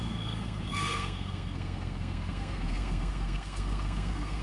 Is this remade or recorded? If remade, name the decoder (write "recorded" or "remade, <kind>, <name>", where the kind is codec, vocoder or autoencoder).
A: remade, codec, SNAC